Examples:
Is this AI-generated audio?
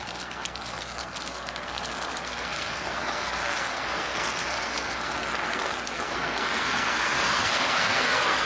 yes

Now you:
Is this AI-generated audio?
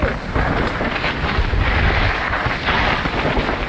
no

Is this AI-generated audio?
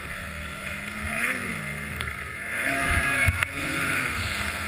yes